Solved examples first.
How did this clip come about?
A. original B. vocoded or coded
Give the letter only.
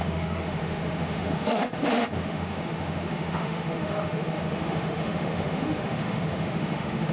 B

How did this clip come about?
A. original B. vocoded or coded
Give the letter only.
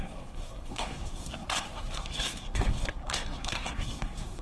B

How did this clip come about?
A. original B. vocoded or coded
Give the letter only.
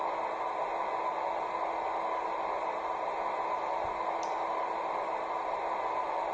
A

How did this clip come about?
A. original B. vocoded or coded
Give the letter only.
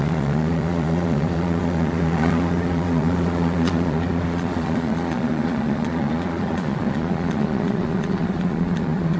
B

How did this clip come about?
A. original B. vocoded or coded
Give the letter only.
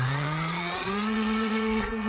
B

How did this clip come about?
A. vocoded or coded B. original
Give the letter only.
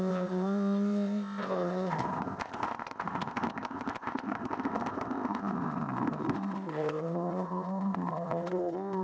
A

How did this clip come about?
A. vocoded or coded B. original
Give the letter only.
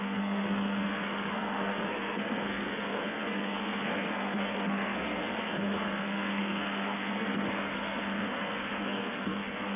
A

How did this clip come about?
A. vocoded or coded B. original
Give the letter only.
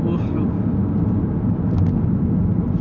B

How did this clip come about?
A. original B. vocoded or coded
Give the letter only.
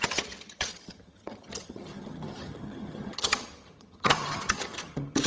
B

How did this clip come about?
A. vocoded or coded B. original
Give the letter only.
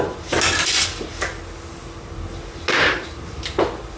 B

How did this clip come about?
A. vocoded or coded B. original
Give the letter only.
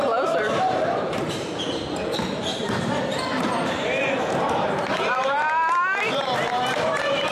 A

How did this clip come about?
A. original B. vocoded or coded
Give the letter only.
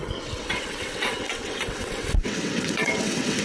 B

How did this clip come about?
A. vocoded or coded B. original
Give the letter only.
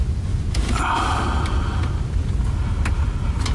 B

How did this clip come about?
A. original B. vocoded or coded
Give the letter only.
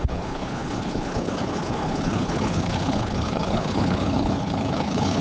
B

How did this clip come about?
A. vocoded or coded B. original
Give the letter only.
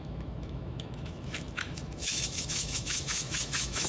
A